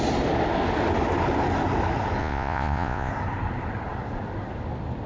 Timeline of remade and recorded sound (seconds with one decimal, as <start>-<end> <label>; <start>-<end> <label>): 0.0-2.2 recorded; 2.2-3.1 remade; 3.1-5.1 recorded

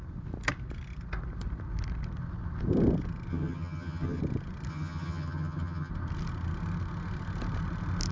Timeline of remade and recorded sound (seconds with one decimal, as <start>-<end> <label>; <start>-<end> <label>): 0.0-3.3 recorded; 3.3-4.2 remade; 4.2-4.7 recorded; 4.7-5.9 remade; 5.9-8.1 recorded

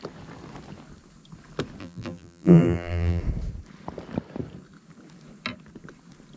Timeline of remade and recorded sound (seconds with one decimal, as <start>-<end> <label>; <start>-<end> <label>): 0.0-1.8 recorded; 1.8-3.2 remade; 3.2-6.4 recorded

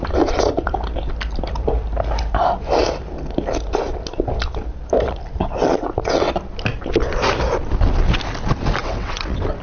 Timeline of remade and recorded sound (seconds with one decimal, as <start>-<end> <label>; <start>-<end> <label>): 0.0-5.6 recorded; 5.6-6.3 remade; 6.3-8.8 recorded; 8.8-9.6 remade

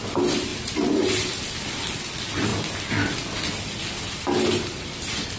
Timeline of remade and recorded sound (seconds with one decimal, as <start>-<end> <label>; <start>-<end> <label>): 0.0-5.4 recorded